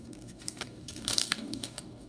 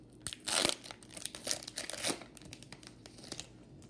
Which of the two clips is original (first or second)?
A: second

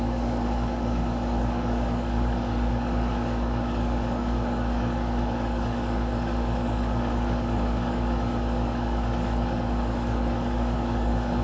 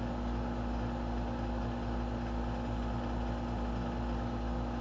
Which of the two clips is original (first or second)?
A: second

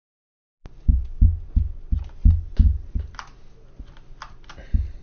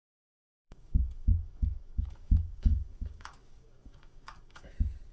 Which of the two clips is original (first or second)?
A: first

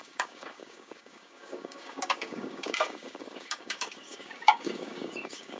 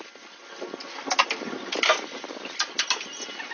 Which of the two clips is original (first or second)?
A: second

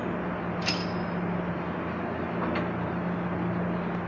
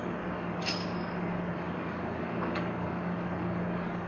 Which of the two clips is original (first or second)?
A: first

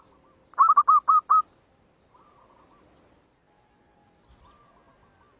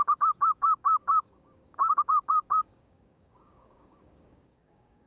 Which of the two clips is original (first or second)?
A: first